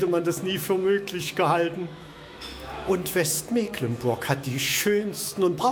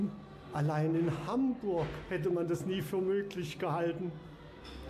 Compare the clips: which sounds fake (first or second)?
first